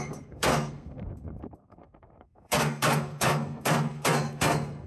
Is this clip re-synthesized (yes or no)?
yes